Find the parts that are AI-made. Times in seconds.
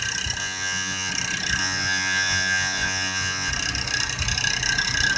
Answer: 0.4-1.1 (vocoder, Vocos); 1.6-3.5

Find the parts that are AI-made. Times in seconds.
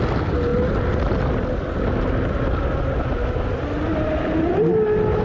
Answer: none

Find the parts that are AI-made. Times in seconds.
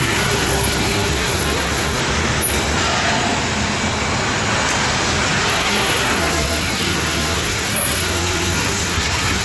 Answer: 0.0-2.0 (codec, SNAC); 5.5-9.4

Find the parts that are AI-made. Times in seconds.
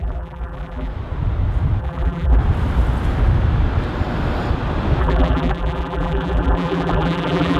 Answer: 0.0-0.9 (vocoder, BigVGAN v2); 1.8-2.4; 5.0-7.6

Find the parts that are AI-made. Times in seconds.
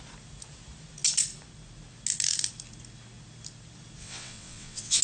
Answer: 4.0-5.0 (vocoder, WaveNeXt)